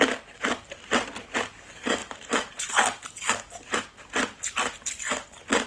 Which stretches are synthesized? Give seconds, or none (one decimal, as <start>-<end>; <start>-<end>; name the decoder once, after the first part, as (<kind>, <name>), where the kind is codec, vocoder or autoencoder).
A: 2.0-2.7 (vocoder, BigVGAN v2)